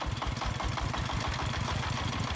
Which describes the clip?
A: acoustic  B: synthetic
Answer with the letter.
A